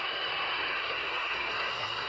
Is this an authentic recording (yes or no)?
no